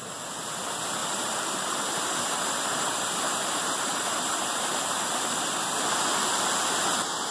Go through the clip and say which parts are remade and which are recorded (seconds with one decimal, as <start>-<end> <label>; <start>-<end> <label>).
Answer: 0.0-1.0 recorded; 1.0-5.4 remade; 5.4-7.3 recorded